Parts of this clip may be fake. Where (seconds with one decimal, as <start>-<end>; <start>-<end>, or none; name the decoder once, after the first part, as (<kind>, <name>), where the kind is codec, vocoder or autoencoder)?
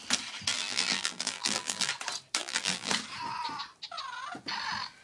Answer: 0.5-1.9 (vocoder, BigVGAN v2); 2.4-2.9